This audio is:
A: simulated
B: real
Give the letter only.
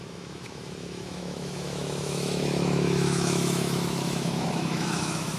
A